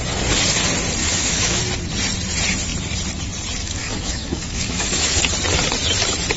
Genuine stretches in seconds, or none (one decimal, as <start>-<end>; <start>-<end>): 0.0-1.0; 1.6-3.6; 5.2-6.4